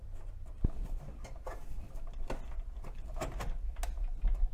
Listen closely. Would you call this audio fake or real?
real